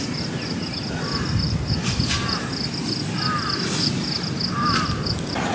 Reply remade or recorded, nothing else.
recorded